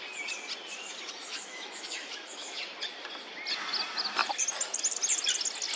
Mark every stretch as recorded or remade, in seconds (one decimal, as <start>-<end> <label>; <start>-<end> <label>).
0.0-1.2 recorded; 1.2-2.6 remade; 2.6-5.8 recorded